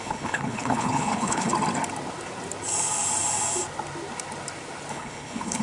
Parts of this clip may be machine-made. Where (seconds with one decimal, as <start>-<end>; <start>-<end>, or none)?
0.0-1.5; 4.9-5.6